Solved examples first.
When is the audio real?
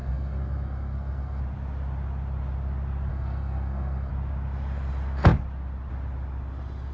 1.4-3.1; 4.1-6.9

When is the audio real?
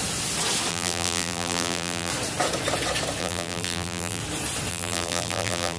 0.0-0.7; 2.1-3.2; 4.2-4.7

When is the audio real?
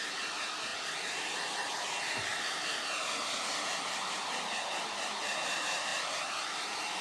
0.0-7.0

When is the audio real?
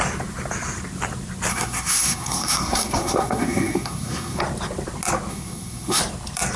0.0-1.5; 4.4-5.3; 6.0-6.6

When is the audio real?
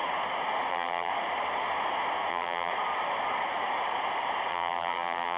0.0-0.7; 1.1-2.3; 2.7-4.5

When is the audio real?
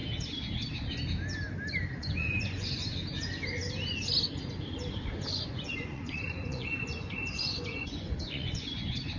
0.0-2.0; 2.9-4.9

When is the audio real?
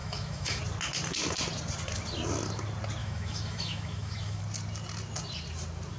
0.6-3.0; 4.4-6.0